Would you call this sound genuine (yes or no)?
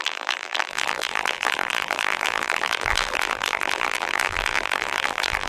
no